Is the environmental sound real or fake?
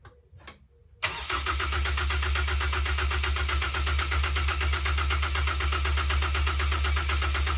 real